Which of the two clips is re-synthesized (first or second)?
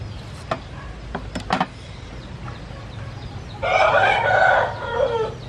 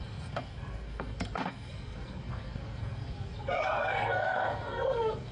second